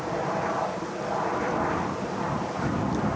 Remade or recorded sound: recorded